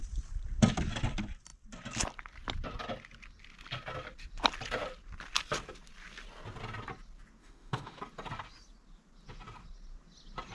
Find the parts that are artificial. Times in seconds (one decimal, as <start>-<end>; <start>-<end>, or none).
7.4-8.0